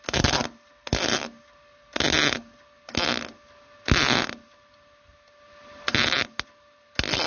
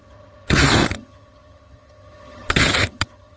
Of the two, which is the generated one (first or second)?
second